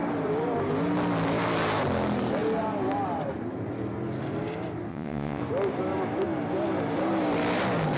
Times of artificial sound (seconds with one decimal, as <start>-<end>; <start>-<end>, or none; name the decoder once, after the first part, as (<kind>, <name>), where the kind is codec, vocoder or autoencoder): 4.9-5.4 (vocoder, WaveNeXt)